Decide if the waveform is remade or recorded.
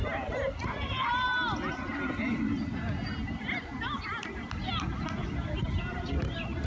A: recorded